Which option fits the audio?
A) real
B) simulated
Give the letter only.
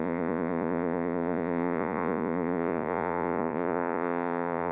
B